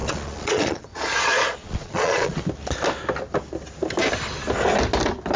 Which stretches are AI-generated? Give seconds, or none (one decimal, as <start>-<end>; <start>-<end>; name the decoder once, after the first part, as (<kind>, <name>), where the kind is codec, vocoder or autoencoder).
0.0-2.4 (vocoder, Vocos)